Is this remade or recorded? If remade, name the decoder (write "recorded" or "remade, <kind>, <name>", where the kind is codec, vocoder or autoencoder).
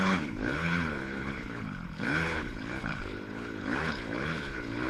remade, codec, HILCodec